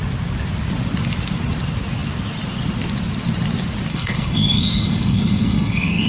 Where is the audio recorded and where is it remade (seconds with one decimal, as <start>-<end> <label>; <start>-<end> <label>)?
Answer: 0.0-3.9 recorded; 3.9-6.1 remade